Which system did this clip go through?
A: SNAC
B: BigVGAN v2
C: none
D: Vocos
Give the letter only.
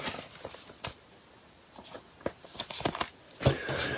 C